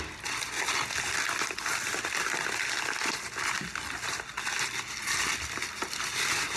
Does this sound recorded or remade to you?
recorded